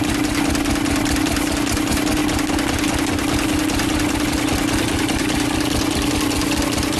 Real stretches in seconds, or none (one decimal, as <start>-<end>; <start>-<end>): 0.0-7.0